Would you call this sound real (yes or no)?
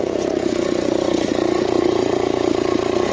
no